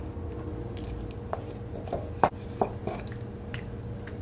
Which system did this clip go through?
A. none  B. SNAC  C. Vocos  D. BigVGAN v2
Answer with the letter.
A